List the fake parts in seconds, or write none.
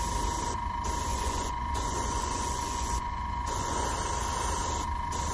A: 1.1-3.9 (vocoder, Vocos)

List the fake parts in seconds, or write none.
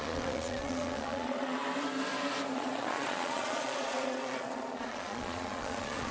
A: 0.0-1.6 (vocoder, Vocos); 2.5-6.1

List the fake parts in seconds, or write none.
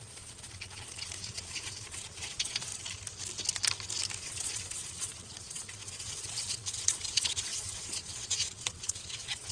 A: 0.0-2.7 (vocoder, Vocos); 4.2-9.5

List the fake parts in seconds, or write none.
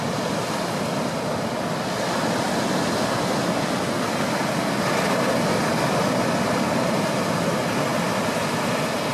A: none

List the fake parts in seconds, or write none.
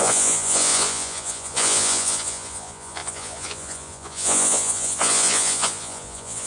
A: 0.0-6.5 (vocoder, Vocos)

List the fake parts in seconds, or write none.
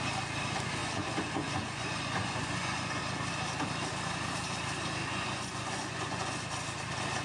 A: 0.8-3.0 (vocoder, Vocos); 5.0-6.4